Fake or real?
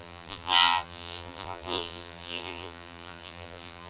fake